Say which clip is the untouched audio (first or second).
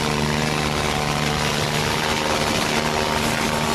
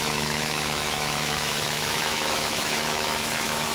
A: first